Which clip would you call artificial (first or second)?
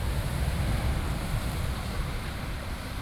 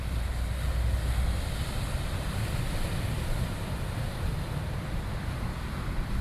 first